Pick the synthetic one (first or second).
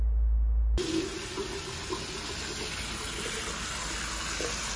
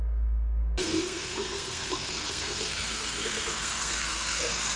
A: second